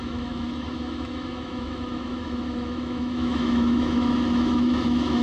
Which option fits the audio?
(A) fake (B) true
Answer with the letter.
A